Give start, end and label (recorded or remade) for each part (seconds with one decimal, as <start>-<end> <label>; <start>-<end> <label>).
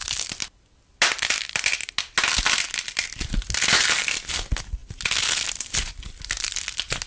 0.0-7.1 recorded